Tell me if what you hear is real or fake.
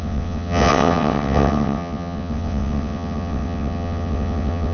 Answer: fake